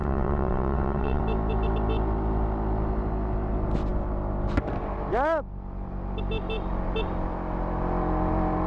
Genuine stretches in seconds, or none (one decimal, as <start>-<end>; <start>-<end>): 1.2-8.7

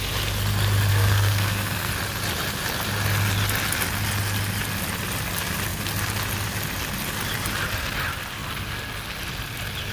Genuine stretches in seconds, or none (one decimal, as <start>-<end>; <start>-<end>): 0.0-0.9; 1.9-9.9

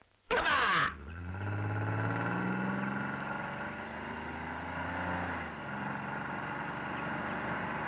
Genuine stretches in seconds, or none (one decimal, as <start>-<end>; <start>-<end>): 1.3-7.9

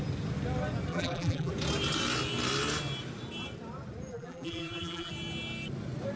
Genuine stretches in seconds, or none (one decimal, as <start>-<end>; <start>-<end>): 0.0-0.9; 1.5-4.1; 5.1-6.2

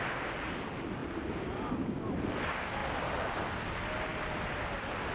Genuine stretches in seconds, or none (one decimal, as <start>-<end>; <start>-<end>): 0.0-1.0; 2.0-4.1

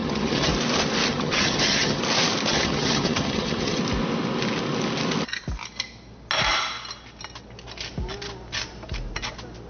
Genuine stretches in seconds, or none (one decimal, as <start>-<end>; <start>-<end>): 0.5-1.1; 2.0-2.5; 3.8-9.7